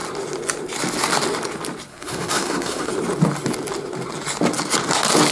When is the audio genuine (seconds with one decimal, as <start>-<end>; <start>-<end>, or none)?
0.0-1.9; 2.9-5.3